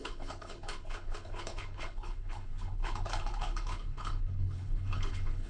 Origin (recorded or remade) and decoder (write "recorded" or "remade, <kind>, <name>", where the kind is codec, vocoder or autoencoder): remade, codec, HILCodec